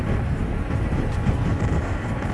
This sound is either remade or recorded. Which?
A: recorded